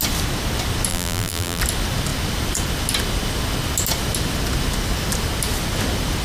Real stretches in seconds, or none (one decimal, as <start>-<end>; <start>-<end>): 0.0-0.9; 1.6-6.2